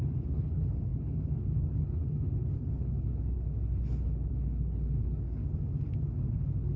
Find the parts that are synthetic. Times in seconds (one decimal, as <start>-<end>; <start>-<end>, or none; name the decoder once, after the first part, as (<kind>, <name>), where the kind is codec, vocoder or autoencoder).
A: 0.0-5.4 (codec, HILCodec); 6.3-6.8